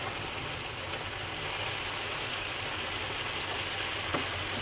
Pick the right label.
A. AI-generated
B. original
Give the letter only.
B